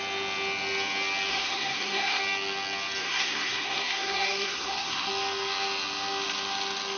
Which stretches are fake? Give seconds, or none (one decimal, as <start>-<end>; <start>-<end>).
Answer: 1.3-2.2; 3.0-5.1